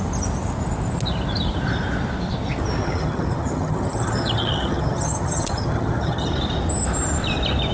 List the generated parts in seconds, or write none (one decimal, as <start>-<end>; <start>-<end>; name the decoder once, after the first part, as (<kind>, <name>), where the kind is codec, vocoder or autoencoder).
2.8-6.3 (vocoder, HiFi-GAN)